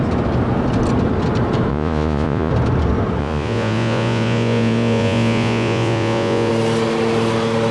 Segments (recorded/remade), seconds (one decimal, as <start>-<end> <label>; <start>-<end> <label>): 0.0-1.7 recorded; 1.7-2.5 remade; 2.5-3.2 recorded; 3.2-6.5 remade; 6.5-7.7 recorded